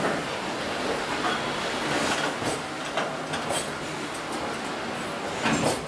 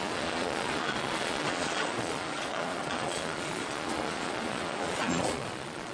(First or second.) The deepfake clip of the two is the second